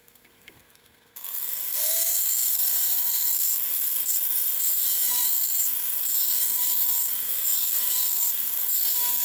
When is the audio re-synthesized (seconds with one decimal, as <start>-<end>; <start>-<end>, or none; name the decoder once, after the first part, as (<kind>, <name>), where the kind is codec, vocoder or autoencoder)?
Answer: 0.0-9.2 (codec, SNAC)